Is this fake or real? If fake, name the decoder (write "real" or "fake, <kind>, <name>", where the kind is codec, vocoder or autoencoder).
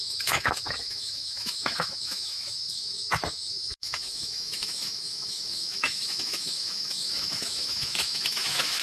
fake, autoencoder, DAC-VAE